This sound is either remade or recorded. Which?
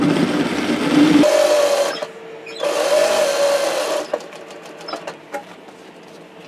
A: recorded